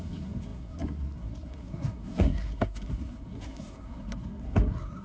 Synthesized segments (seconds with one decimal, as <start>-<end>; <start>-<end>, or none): 0.0-5.0